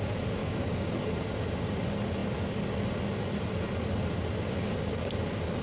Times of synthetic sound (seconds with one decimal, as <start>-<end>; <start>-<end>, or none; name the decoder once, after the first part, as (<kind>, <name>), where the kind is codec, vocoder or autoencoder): 0.4-0.9 (codec, DAC)